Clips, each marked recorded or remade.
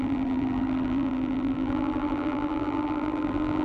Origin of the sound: remade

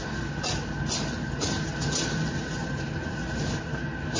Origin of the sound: recorded